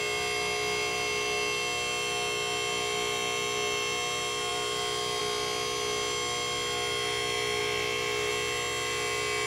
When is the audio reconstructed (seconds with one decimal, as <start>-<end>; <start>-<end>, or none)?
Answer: 7.6-8.3